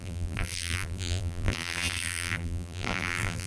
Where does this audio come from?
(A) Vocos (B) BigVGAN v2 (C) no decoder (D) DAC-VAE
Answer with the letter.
B